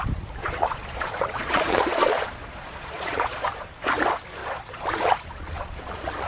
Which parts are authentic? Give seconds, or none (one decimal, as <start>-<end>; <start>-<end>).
0.0-0.4; 3.7-4.4